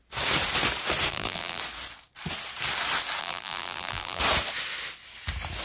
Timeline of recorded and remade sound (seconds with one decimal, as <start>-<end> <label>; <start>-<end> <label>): 0.0-1.1 recorded; 1.1-1.6 remade; 1.6-3.2 recorded; 3.2-4.2 remade; 4.2-5.6 recorded

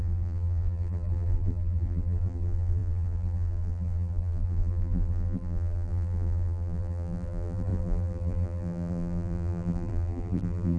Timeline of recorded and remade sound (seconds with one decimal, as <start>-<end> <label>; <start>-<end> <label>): 0.0-10.8 remade

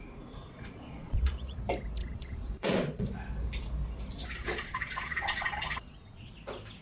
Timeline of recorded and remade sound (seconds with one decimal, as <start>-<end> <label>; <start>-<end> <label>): 0.0-0.4 recorded; 0.4-1.6 remade; 1.6-2.0 recorded; 2.0-3.1 remade; 3.1-4.4 recorded; 4.4-6.3 remade; 6.3-6.8 recorded